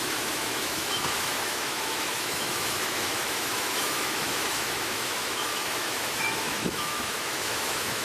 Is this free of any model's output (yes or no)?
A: no